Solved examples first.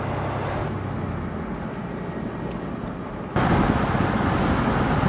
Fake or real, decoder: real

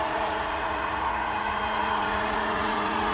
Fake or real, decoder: fake, vocoder, Vocos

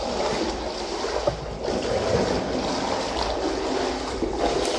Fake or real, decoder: real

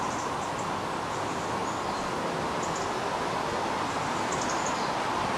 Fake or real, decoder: real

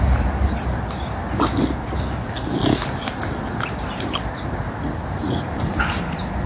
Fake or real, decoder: real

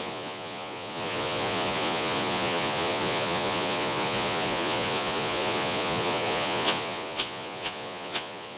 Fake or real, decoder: fake, vocoder, Vocos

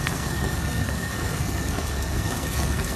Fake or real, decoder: fake, codec, SNAC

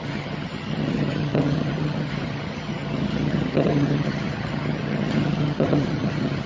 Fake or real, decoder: fake, vocoder, HiFi-GAN